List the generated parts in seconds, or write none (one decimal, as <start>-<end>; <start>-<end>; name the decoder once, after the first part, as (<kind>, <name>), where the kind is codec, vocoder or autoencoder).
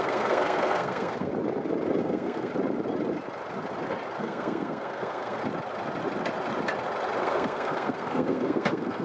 0.0-1.3 (codec, SNAC); 2.0-2.5; 4.2-5.4; 7.2-9.0